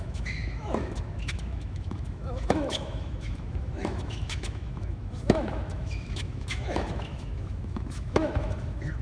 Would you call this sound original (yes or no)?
no